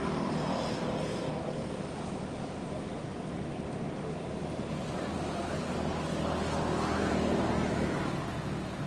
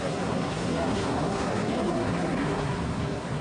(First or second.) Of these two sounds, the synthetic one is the second